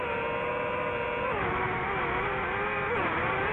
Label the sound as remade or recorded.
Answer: recorded